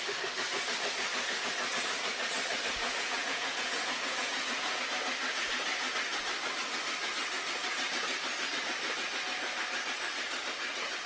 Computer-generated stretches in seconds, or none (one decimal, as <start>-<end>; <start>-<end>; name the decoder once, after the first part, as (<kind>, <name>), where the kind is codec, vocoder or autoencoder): 2.8-4.8 (vocoder, Vocos)